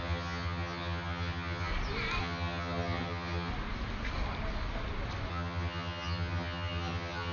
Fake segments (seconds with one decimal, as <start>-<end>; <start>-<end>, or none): 0.0-1.7; 2.2-3.5; 5.3-7.3